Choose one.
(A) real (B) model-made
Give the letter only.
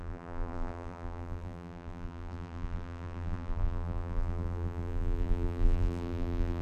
B